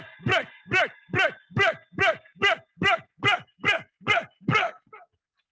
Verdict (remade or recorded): recorded